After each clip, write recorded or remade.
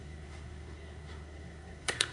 remade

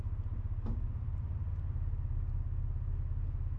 recorded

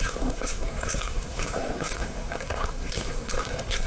remade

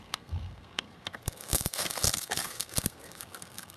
remade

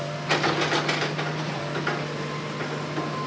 recorded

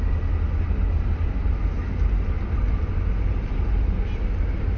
recorded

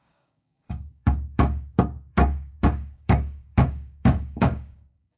remade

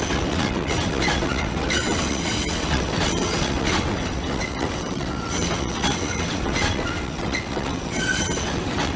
remade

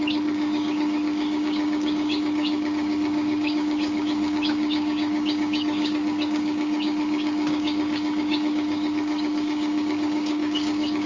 remade